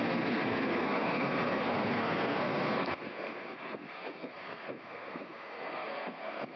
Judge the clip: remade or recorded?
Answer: remade